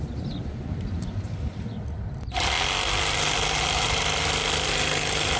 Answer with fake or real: real